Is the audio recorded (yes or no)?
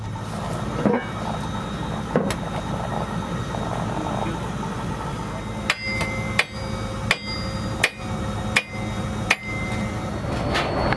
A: yes